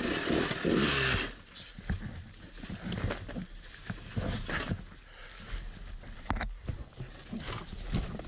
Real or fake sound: real